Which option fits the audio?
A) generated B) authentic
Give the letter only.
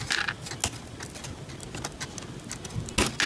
B